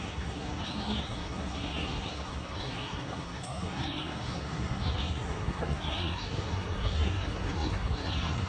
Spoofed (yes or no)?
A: yes